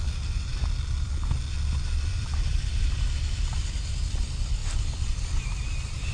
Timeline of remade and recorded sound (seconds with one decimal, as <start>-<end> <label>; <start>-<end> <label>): 0.0-6.1 recorded